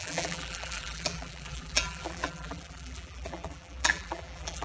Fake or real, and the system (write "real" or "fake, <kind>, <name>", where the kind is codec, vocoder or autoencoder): fake, vocoder, BigVGAN v2